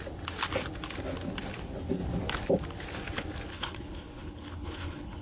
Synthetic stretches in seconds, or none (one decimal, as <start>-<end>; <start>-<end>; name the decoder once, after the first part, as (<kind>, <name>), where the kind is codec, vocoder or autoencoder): 3.5-5.2 (codec, HILCodec)